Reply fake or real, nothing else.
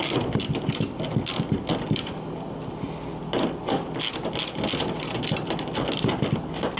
real